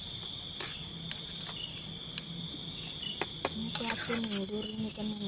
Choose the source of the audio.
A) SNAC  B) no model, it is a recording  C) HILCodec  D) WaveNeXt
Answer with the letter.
B